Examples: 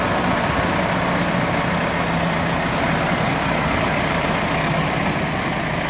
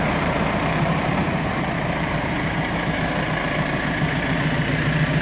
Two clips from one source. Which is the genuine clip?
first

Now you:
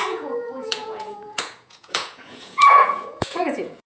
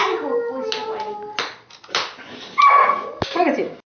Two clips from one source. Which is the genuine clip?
second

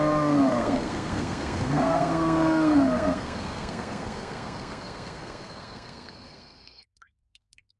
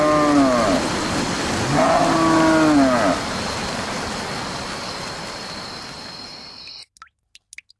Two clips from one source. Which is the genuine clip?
second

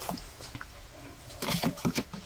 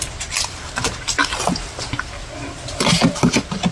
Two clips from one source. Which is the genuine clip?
second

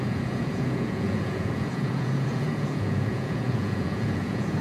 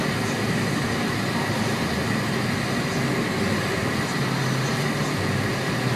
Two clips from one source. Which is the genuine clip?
second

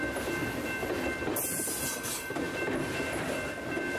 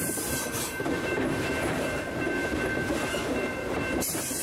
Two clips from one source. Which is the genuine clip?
first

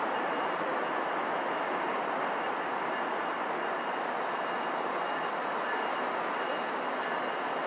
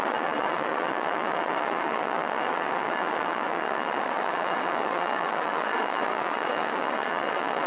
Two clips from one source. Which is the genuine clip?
first